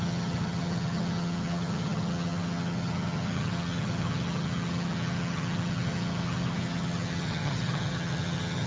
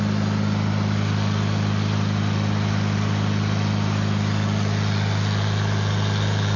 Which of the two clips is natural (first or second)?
second